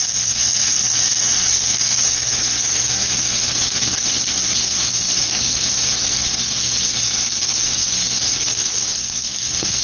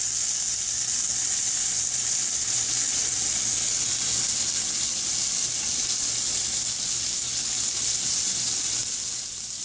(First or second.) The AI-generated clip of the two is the first